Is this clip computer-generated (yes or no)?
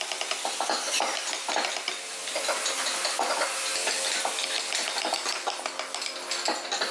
no